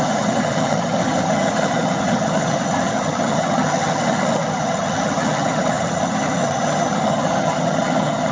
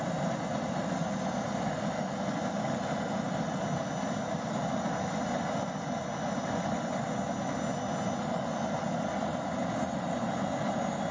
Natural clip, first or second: second